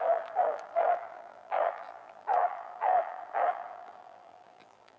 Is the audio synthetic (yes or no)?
yes